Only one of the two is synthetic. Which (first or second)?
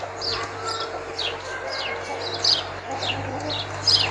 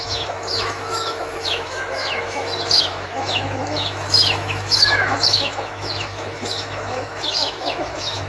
second